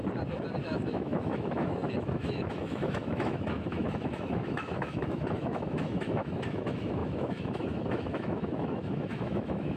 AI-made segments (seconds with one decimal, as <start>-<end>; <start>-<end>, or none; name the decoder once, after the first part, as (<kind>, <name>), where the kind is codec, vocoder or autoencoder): 0.6-9.8 (autoencoder, DAC-VAE)